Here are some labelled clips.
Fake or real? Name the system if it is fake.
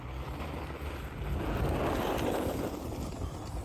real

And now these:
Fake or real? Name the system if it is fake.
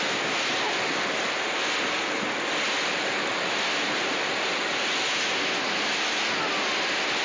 real